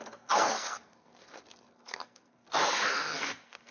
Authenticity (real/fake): fake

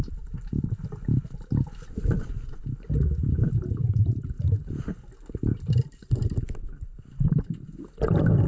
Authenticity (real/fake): real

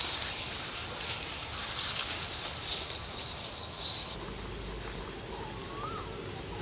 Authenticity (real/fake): real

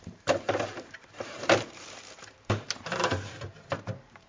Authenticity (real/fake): fake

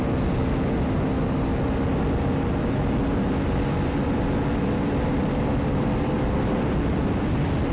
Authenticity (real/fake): real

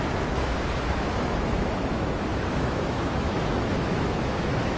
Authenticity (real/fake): fake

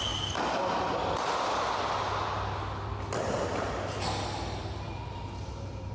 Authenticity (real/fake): real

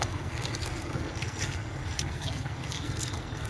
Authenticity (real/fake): fake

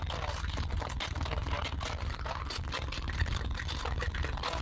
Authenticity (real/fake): real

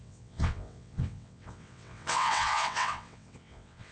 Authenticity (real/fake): fake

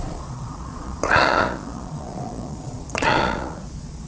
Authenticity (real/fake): fake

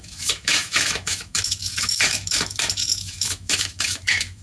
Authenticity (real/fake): fake